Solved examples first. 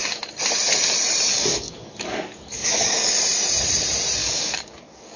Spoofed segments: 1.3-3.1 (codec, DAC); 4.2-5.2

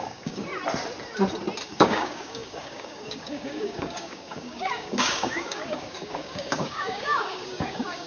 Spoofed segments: 0.0-0.5 (codec, DAC); 1.7-8.1

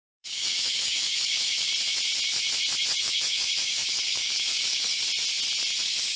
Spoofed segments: 0.0-1.7 (codec, DAC); 3.0-5.0; 5.8-6.2

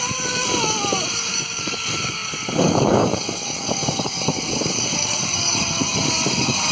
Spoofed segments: 0.0-6.7 (codec, DAC)

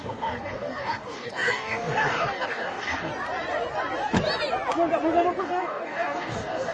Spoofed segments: 0.0-3.1 (codec, DAC); 5.4-6.7

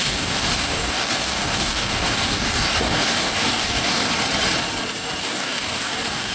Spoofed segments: 0.0-4.1 (codec, DAC); 5.2-6.3

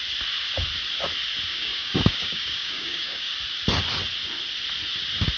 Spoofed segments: 1.5-3.3 (codec, DAC)

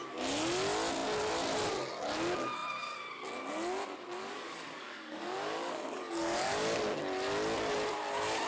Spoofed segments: 4.2-6.8 (codec, DAC)